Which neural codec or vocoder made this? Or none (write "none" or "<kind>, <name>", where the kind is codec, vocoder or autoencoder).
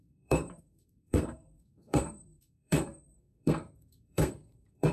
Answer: codec, SNAC